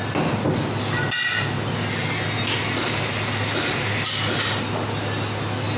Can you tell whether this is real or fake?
real